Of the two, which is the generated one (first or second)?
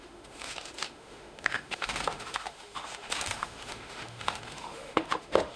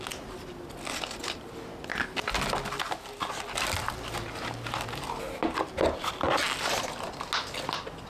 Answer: first